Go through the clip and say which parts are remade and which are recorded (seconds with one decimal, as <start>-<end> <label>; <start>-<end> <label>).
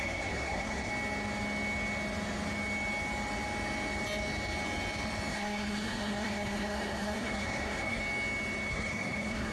0.0-0.9 remade; 0.9-5.3 recorded; 5.3-8.0 remade; 8.0-8.7 recorded; 8.7-9.5 remade